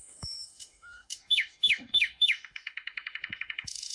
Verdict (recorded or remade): remade